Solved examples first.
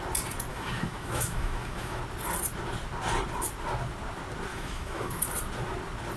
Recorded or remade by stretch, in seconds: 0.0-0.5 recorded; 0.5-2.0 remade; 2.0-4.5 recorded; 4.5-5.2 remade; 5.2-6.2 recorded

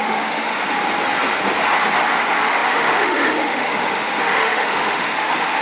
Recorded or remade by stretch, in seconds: 0.0-0.6 remade; 0.6-2.0 recorded; 2.0-5.6 remade

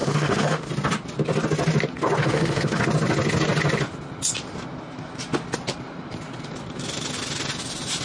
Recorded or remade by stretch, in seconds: 0.0-0.7 remade; 0.7-2.2 recorded; 2.2-2.8 remade; 2.8-8.0 recorded

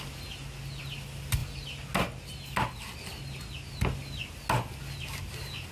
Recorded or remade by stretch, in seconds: 0.0-5.7 recorded

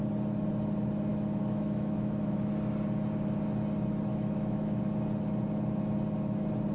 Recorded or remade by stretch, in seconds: 0.0-1.1 recorded; 1.1-2.5 remade; 2.5-4.1 recorded; 4.1-4.8 remade; 4.8-6.7 recorded